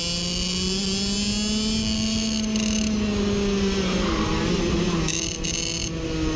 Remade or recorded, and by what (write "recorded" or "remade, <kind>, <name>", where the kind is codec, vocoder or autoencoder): recorded